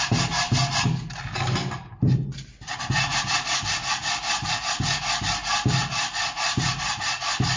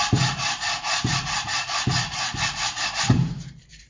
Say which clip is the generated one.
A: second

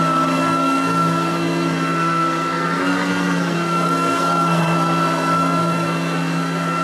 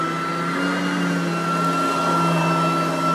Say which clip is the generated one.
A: first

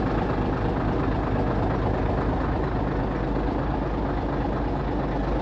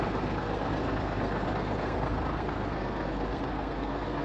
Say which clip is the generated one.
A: second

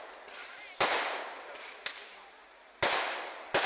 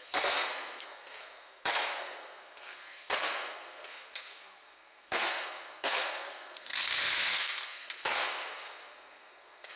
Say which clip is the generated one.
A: second